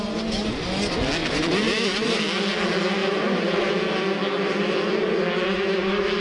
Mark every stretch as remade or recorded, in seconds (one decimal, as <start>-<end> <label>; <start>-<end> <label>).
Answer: 0.0-1.2 recorded; 1.2-2.2 remade; 2.2-3.0 recorded; 3.0-3.7 remade; 3.7-6.2 recorded